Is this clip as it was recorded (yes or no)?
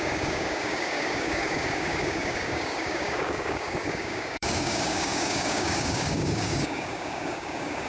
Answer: no